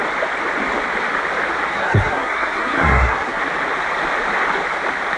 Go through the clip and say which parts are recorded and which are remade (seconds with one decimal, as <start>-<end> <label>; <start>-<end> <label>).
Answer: 0.0-1.7 recorded; 1.7-3.4 remade; 3.4-5.2 recorded